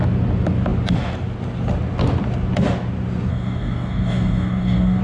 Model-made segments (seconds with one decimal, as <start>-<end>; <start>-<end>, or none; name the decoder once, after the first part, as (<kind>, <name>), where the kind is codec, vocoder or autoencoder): 3.3-5.0 (codec, DAC)

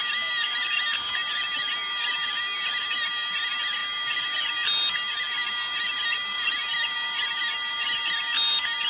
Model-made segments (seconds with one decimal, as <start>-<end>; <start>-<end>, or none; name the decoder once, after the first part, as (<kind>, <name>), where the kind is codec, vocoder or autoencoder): none